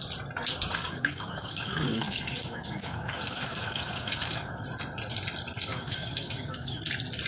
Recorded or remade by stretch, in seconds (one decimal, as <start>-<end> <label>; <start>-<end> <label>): 0.0-0.8 recorded; 0.8-4.5 remade; 4.5-5.7 recorded; 5.7-6.8 remade; 6.8-7.3 recorded